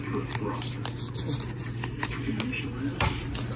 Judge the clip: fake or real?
real